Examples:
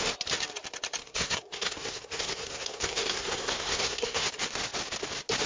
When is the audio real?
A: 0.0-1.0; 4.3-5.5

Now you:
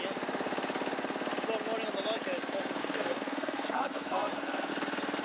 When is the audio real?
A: 0.0-2.8; 4.7-5.2

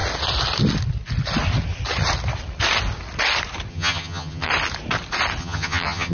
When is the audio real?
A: 0.0-3.7; 4.5-5.4

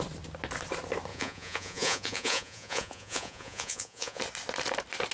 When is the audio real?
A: 0.0-1.1; 4.2-5.1

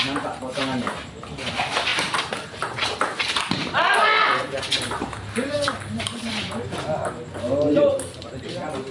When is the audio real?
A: 0.0-1.9; 6.8-8.9

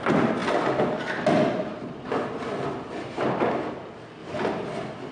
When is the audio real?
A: 0.0-5.1